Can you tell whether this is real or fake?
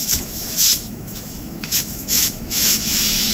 fake